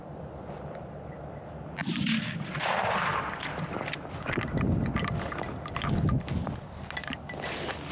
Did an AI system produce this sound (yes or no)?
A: no